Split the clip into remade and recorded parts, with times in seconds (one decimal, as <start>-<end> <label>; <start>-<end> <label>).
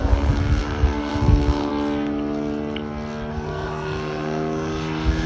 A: 0.0-1.7 remade; 1.7-3.3 recorded; 3.3-5.3 remade